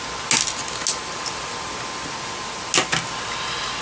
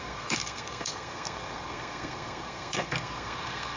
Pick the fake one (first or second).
second